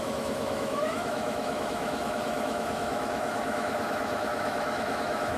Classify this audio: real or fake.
fake